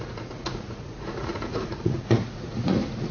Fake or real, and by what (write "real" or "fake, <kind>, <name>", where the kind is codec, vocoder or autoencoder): fake, vocoder, Vocos